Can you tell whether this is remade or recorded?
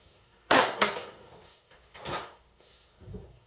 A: remade